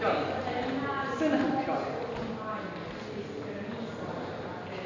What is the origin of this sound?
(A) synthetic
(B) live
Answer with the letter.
B